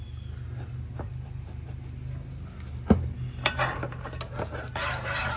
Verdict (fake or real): real